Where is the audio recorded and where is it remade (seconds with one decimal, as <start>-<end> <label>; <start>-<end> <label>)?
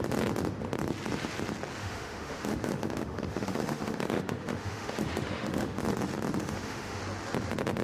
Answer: 0.0-1.8 recorded; 1.8-5.8 remade; 5.8-6.4 recorded; 6.4-7.0 remade; 7.0-7.8 recorded